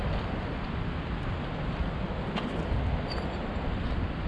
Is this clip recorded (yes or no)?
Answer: yes